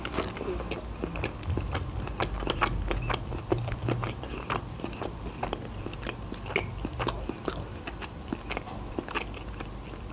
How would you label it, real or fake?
real